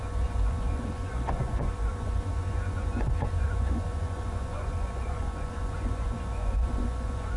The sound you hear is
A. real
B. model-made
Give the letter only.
B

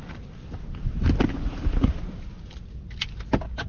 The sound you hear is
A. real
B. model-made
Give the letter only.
A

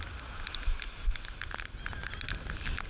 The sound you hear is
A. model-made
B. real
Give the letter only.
B